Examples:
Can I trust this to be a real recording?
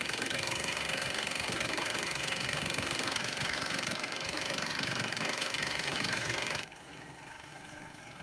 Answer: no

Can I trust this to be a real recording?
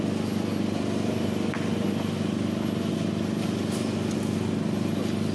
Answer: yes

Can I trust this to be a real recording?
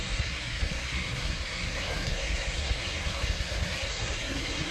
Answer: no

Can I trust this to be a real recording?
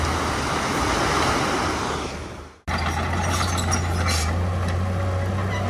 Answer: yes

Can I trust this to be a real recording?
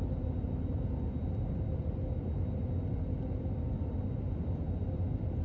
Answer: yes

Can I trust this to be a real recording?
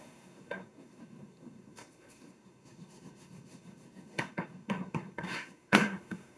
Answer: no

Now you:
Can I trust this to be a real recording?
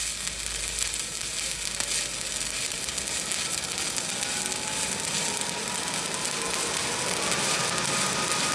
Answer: yes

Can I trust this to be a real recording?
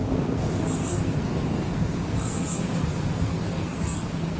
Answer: no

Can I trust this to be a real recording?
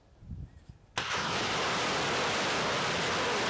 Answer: yes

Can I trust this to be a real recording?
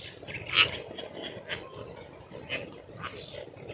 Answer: yes